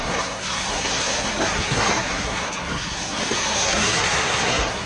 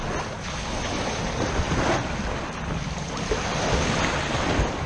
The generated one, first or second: first